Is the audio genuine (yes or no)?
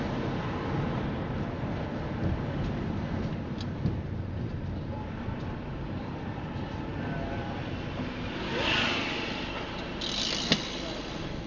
yes